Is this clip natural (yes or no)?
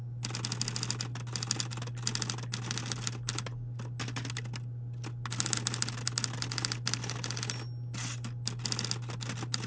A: yes